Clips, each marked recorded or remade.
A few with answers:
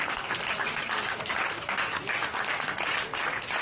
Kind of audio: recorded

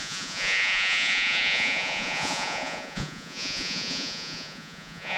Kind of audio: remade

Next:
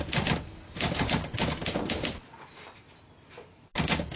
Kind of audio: recorded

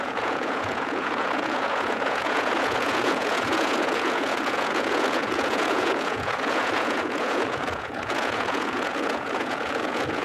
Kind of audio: remade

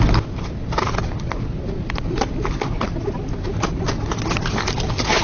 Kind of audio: recorded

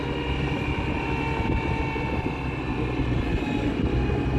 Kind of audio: recorded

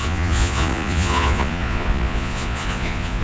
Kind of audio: remade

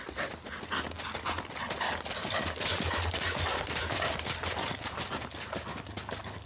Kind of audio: recorded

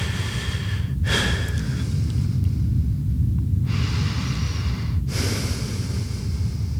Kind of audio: recorded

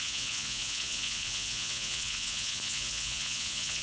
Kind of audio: remade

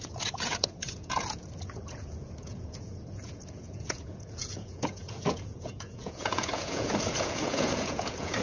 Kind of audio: remade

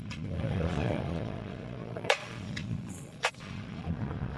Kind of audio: remade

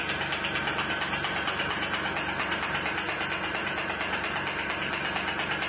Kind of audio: recorded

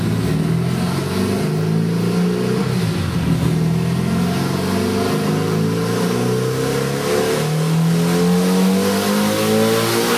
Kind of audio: recorded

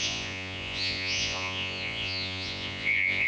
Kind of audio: remade